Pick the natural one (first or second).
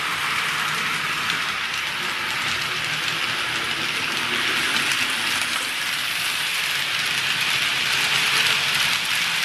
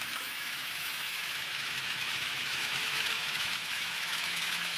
first